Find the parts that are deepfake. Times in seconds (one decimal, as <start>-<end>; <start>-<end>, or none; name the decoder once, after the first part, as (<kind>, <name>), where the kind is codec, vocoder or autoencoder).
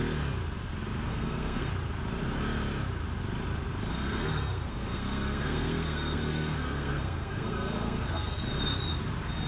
1.1-1.7 (codec, SNAC); 3.9-8.4